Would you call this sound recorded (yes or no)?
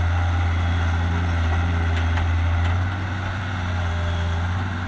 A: yes